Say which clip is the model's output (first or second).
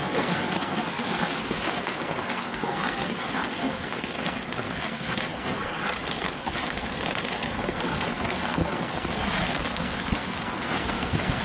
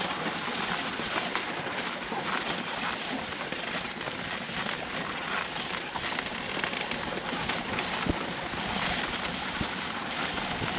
first